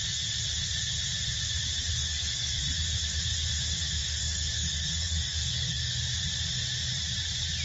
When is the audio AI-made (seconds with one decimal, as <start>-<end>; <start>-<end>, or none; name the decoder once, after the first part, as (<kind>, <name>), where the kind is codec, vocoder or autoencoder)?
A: 1.9-2.6 (codec, DAC); 4.0-6.0